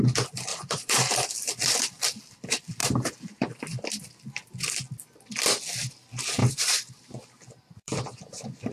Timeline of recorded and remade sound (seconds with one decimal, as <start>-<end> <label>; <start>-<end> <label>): 0.0-0.5 recorded; 0.5-1.1 remade; 1.1-2.8 recorded; 2.8-3.6 remade; 3.6-6.4 recorded; 6.4-7.9 remade; 7.9-8.7 recorded